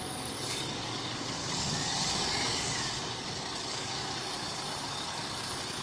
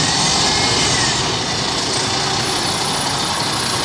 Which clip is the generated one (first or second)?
first